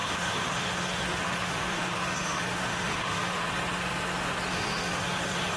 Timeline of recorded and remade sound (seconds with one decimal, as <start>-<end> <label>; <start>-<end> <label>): 0.0-3.4 remade; 3.4-4.5 recorded; 4.5-5.6 remade